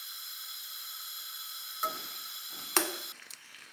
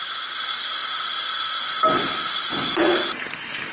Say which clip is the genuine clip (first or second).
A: second